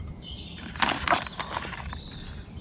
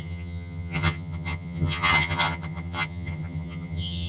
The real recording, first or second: first